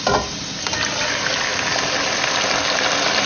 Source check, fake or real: real